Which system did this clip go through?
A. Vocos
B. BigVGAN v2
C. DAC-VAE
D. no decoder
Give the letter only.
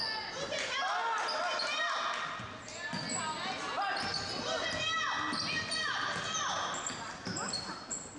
D